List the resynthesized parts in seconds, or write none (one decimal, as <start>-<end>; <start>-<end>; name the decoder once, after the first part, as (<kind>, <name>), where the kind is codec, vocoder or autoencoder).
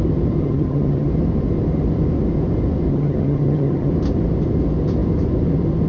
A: 0.4-1.1 (vocoder, HiFi-GAN); 2.9-3.9